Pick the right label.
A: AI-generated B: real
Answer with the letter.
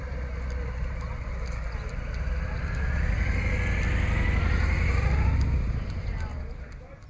B